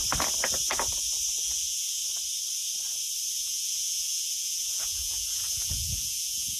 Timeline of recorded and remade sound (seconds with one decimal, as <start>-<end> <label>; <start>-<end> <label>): 0.0-1.3 recorded; 1.3-2.0 remade; 2.0-3.3 recorded; 3.3-6.6 remade